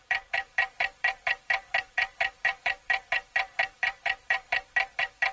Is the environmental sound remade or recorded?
remade